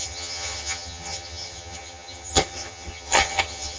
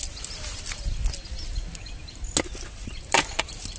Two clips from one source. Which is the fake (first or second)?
first